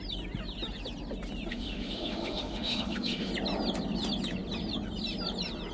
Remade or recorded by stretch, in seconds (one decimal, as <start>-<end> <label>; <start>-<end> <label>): 0.0-1.5 recorded; 1.5-3.3 remade; 3.3-5.7 recorded